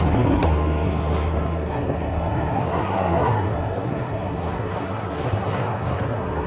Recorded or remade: remade